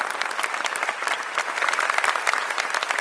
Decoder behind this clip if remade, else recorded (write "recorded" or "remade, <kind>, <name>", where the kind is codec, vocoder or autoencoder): recorded